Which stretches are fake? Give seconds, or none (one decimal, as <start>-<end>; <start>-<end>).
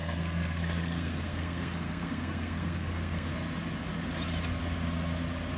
0.0-3.3